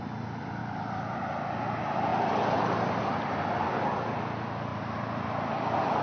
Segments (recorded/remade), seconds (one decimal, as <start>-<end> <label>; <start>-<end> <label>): 0.0-0.6 recorded; 0.6-1.3 remade; 1.3-4.7 recorded; 4.7-5.4 remade; 5.4-6.0 recorded